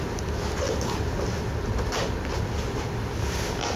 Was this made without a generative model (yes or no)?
yes